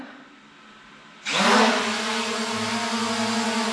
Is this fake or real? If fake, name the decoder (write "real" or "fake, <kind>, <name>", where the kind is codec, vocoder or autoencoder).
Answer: real